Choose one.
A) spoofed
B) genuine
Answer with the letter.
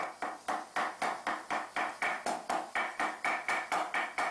B